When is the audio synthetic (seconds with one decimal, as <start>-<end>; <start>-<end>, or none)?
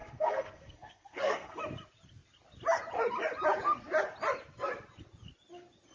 0.0-1.6